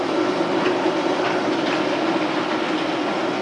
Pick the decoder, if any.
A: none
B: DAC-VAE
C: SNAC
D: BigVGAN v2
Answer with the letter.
A